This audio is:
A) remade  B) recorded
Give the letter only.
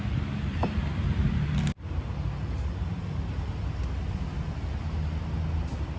B